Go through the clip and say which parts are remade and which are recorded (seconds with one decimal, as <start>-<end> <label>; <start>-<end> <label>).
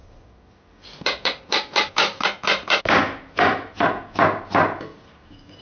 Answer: 0.0-2.8 remade; 2.8-5.6 recorded